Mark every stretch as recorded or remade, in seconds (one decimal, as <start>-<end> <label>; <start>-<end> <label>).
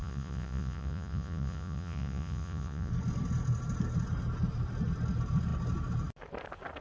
0.0-2.9 remade; 2.9-6.8 recorded